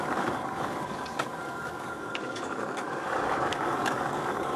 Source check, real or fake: fake